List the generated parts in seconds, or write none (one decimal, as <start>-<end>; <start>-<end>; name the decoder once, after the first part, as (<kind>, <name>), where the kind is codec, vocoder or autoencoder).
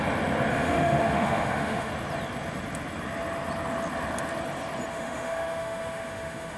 0.5-1.9 (autoencoder, DAC-VAE); 4.9-6.6